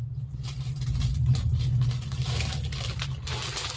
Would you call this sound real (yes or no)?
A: yes